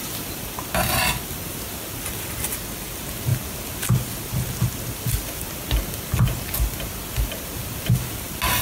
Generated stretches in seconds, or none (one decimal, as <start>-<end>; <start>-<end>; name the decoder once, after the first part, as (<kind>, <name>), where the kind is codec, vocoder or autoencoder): none